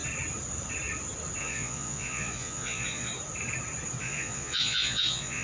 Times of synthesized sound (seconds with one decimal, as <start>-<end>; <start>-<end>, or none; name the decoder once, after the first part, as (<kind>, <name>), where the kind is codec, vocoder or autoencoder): 1.4-3.1 (vocoder, Vocos); 4.0-5.4